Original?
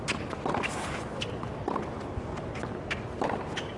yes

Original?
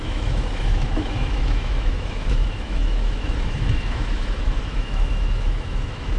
no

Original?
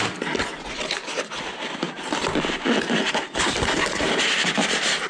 yes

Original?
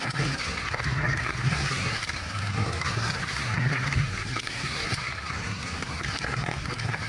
no